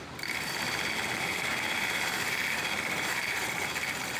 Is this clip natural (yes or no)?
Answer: no